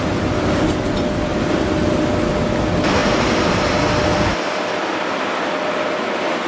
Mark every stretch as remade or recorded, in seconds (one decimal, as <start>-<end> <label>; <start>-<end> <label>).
0.0-6.5 recorded